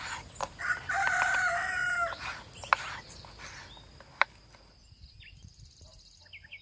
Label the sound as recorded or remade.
recorded